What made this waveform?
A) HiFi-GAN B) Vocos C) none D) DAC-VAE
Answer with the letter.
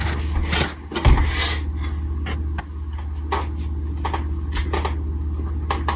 C